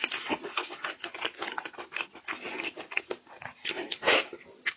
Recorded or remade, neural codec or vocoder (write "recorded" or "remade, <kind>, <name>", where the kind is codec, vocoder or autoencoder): recorded